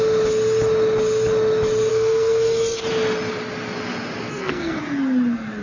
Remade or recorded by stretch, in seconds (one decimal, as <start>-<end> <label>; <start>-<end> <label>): 0.0-1.9 recorded; 1.9-2.8 remade; 2.8-4.3 recorded; 4.3-4.8 remade; 4.8-5.6 recorded

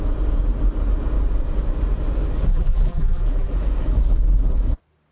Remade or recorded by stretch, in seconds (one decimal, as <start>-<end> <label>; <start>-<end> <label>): 0.0-2.5 recorded; 2.5-3.5 remade; 3.5-5.1 recorded

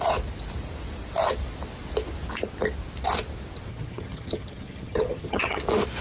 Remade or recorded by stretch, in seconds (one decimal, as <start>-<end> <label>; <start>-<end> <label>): 0.0-3.7 recorded; 3.7-5.6 remade; 5.6-6.0 recorded

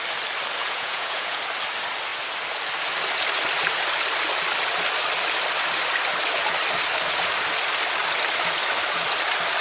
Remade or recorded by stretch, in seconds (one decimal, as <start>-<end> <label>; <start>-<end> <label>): 0.0-0.6 recorded; 0.6-1.4 remade; 1.4-9.6 recorded

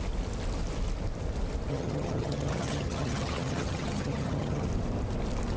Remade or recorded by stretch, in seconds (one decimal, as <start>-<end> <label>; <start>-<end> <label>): 0.0-1.7 recorded; 1.7-4.7 remade; 4.7-5.6 recorded